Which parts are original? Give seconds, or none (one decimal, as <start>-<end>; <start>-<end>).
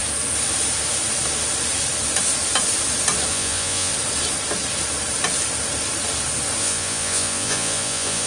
0.0-3.3; 3.9-6.6